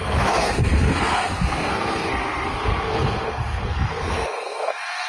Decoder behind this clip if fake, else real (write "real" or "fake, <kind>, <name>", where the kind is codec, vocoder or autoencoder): fake, codec, SNAC